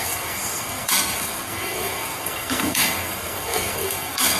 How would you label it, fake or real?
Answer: fake